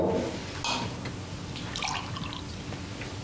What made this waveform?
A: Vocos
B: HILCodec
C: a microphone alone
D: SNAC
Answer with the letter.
C